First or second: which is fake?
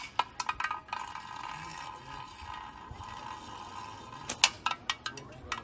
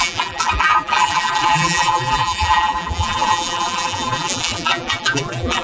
second